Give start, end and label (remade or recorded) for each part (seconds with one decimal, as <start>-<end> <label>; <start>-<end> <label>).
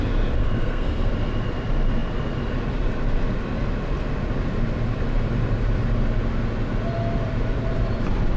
0.0-0.4 recorded; 0.4-1.1 remade; 1.1-8.4 recorded